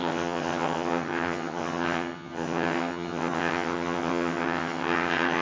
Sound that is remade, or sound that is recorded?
remade